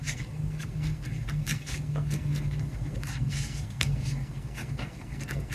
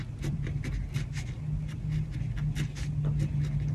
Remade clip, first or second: first